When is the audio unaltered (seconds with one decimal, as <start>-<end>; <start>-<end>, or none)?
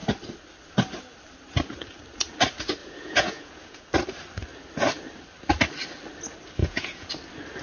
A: 0.0-2.8; 3.8-6.6; 7.1-7.6